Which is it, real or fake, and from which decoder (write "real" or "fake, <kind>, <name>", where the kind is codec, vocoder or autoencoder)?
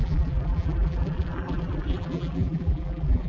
fake, vocoder, BigVGAN v2